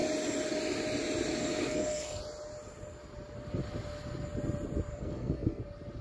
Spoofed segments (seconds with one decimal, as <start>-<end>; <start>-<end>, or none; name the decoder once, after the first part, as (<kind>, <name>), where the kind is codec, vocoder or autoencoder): 1.4-2.2 (codec, SNAC); 4.9-5.6